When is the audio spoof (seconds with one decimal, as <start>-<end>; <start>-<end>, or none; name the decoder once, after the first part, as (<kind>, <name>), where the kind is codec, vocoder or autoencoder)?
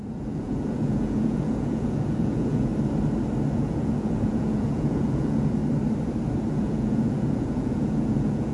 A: 0.0-2.7 (vocoder, Vocos); 3.5-5.6; 6.5-8.5